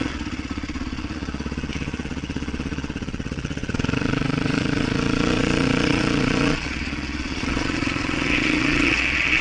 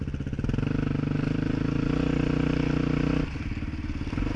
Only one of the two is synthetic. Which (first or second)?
first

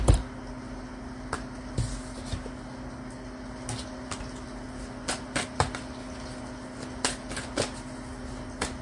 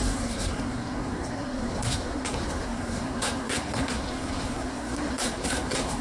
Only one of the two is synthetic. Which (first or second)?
second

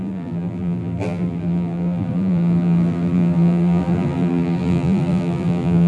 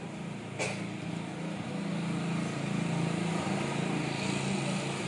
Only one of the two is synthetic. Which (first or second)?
first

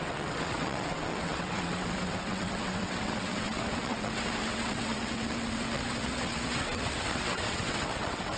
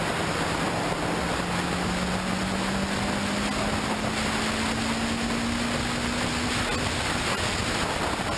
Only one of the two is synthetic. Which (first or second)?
first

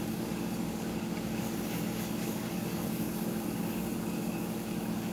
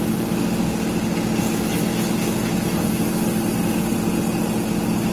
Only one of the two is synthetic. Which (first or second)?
first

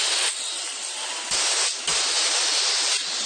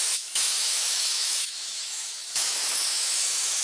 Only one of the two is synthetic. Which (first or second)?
second